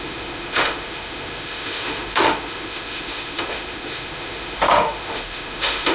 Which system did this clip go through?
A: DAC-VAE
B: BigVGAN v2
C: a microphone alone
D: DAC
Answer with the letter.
A